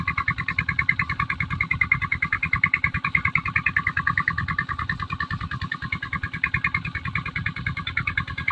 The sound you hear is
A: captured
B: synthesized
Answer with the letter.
A